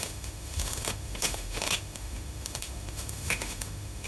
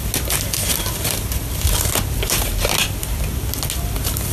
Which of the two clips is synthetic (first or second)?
first